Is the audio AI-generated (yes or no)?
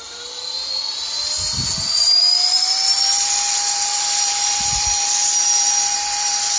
yes